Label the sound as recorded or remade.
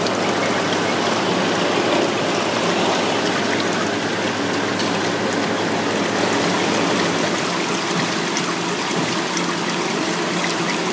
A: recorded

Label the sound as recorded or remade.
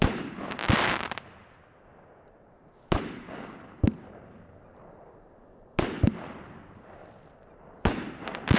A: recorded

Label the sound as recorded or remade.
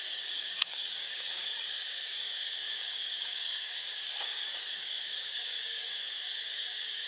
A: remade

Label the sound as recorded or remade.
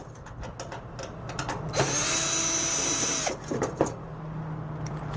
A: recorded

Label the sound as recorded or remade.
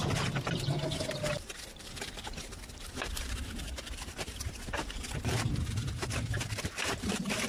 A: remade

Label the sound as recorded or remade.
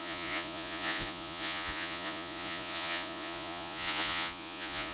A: remade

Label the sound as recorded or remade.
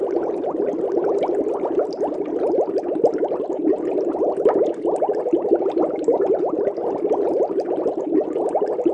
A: recorded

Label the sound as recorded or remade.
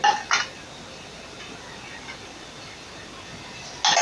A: recorded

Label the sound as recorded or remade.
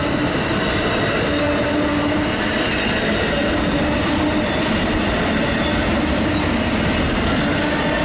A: recorded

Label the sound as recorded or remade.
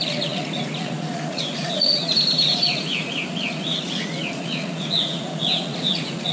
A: remade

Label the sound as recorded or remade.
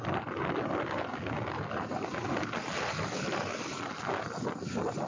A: recorded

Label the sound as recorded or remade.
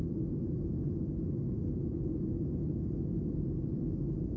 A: recorded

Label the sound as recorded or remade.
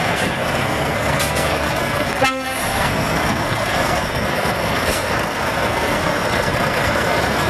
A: remade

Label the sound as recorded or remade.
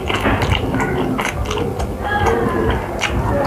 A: recorded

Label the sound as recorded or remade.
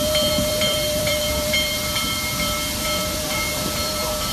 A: remade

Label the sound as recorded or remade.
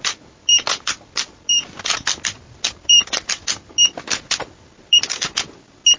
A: recorded